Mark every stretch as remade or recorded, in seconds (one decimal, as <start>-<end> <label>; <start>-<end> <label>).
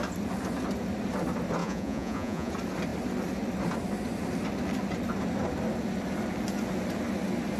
0.0-1.6 recorded; 1.6-2.5 remade; 2.5-7.6 recorded